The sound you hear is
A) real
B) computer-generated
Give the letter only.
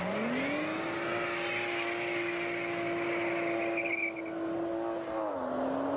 A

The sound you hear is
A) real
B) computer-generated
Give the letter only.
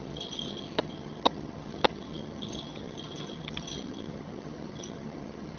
B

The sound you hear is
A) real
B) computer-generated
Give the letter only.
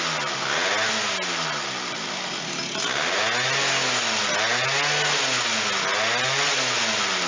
A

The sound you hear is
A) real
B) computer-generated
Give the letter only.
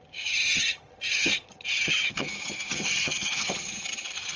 B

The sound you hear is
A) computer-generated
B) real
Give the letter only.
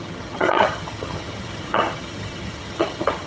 A